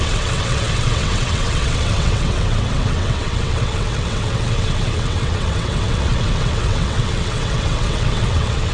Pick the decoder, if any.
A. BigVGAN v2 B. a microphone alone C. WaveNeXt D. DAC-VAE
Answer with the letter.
C